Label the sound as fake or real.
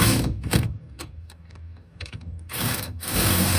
fake